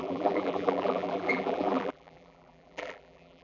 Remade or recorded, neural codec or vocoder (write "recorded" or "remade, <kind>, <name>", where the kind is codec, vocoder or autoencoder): remade, vocoder, BigVGAN v2